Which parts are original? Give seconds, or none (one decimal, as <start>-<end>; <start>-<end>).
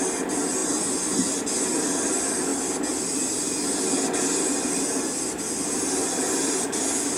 0.0-7.2